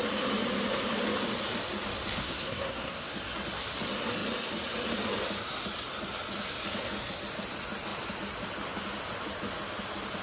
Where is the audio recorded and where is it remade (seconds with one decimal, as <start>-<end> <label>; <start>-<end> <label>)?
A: 0.0-2.2 recorded; 2.2-3.2 remade; 3.2-10.2 recorded